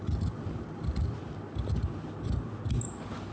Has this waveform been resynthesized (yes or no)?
no